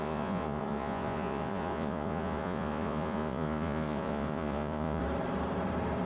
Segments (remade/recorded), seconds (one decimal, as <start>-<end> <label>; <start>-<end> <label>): 0.0-5.0 remade; 5.0-6.1 recorded